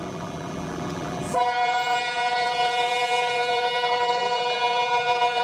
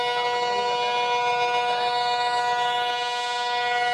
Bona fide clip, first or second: second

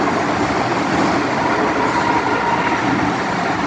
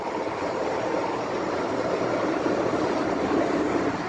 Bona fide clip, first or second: first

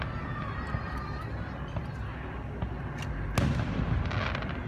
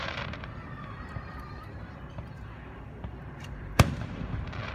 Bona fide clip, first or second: first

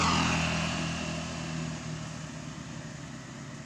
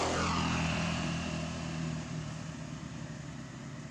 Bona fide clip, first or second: first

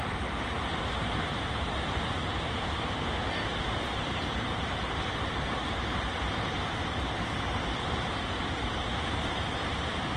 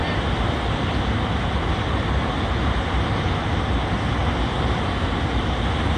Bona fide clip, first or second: second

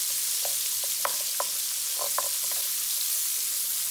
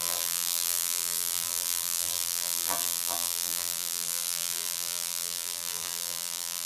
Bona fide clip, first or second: first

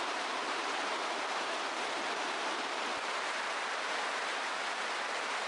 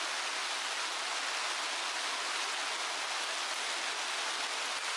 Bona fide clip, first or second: second